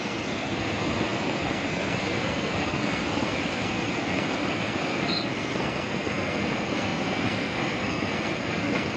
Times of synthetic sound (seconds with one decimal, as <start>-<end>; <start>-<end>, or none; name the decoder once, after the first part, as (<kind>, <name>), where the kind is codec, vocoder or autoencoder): 0.0-9.0 (codec, SNAC)